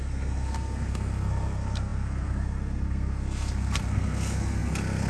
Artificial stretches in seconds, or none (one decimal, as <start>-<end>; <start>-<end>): 0.0-5.1